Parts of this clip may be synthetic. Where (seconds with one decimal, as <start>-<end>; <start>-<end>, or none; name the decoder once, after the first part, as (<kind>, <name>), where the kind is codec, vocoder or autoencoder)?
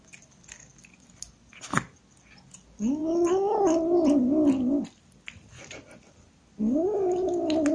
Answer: none